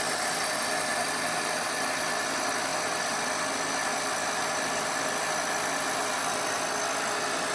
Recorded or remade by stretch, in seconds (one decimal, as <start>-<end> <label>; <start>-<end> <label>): 0.0-7.5 recorded